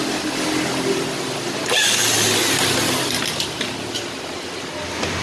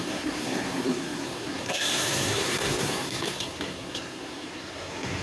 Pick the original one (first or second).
first